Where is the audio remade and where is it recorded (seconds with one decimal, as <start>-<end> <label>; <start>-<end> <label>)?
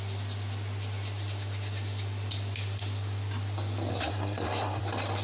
0.0-3.9 recorded; 3.9-4.8 remade; 4.8-5.2 recorded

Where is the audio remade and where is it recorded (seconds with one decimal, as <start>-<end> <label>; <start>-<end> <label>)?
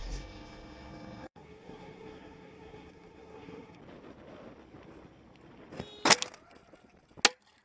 0.0-3.8 remade; 3.8-7.6 recorded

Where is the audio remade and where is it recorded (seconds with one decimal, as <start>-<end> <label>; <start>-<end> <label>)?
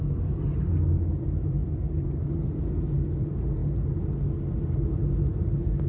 0.0-5.9 recorded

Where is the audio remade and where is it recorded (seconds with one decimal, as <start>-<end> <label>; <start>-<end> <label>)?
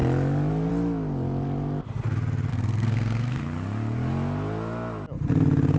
0.0-2.5 recorded; 2.5-3.4 remade; 3.4-5.8 recorded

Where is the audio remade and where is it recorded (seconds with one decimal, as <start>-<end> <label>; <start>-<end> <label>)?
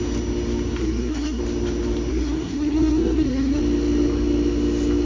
0.0-0.8 recorded; 0.8-1.4 remade; 1.4-2.1 recorded; 2.1-3.6 remade; 3.6-5.0 recorded